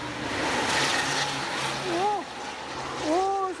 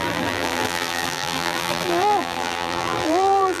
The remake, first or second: second